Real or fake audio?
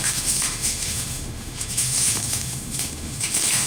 fake